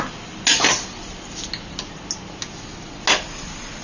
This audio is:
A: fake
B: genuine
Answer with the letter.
B